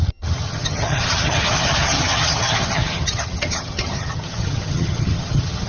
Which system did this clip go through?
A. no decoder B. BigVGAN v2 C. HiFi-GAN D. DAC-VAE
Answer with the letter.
C